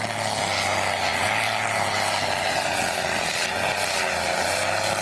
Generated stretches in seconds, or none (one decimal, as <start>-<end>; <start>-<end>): none